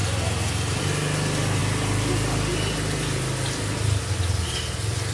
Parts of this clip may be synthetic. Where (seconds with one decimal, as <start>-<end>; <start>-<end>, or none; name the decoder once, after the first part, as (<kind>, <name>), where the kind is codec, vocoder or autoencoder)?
none